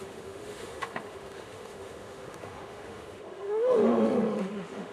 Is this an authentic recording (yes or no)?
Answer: no